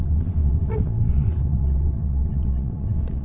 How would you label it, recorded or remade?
remade